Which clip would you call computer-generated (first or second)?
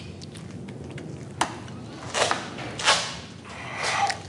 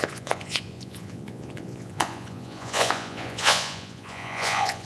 second